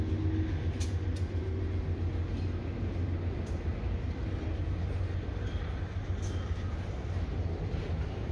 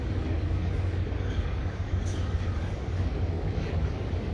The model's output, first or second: second